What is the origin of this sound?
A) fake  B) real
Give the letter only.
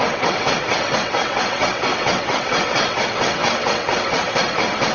A